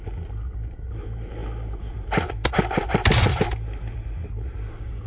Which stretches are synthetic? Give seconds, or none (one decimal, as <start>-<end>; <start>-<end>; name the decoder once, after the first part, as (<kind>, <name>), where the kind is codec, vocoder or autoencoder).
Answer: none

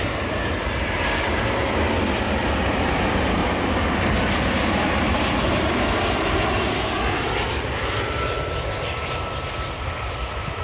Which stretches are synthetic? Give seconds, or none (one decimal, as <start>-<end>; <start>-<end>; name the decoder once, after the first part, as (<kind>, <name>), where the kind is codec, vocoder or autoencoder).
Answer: none

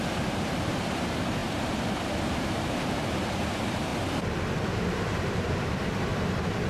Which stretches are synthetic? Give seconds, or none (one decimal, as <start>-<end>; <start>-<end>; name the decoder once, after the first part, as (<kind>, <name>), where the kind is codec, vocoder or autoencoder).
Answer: 0.0-3.9 (vocoder, BigVGAN v2); 4.5-6.1

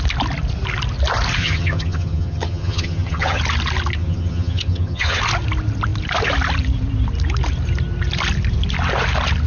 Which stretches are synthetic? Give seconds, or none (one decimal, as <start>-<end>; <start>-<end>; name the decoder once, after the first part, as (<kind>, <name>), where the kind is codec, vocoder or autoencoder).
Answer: 1.4-3.4 (vocoder, HiFi-GAN); 4.0-5.2

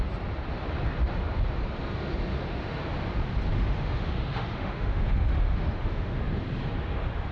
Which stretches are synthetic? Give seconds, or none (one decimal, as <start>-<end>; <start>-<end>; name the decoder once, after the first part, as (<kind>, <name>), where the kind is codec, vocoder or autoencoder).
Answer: 2.3-2.8 (autoencoder, DAC-VAE); 3.5-6.2